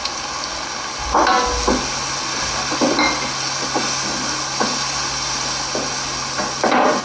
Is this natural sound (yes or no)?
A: yes